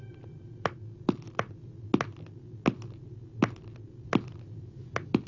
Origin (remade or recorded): recorded